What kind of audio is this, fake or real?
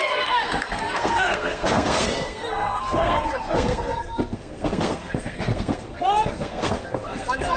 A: fake